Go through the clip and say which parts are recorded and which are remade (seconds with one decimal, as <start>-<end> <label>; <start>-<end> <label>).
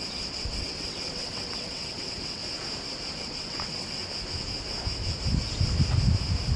0.0-2.4 remade; 2.4-3.2 recorded; 3.2-4.0 remade; 4.0-6.6 recorded